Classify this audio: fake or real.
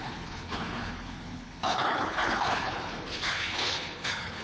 fake